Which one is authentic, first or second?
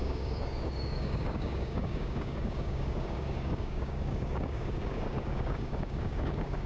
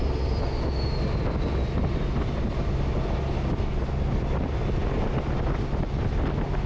second